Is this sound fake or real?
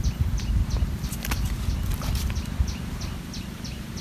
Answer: fake